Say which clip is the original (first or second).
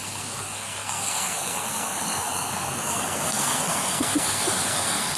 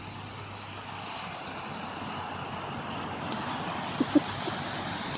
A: second